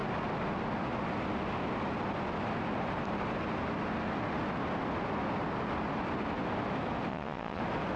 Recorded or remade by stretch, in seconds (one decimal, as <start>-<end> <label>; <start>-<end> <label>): 0.0-7.1 recorded; 7.1-7.6 remade; 7.6-8.0 recorded